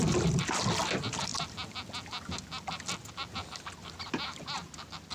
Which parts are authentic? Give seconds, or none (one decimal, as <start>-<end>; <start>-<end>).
0.0-5.1